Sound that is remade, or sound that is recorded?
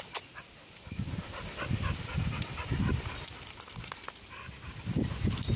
recorded